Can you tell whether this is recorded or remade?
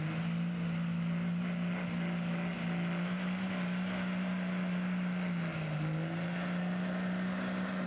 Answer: recorded